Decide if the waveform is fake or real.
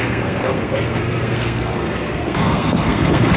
fake